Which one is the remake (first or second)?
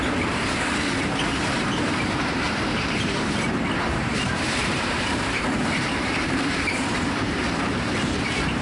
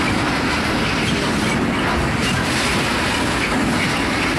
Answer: first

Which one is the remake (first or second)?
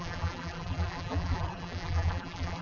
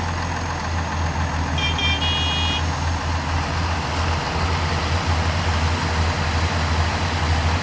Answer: first